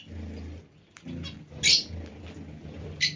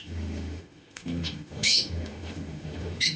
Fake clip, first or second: second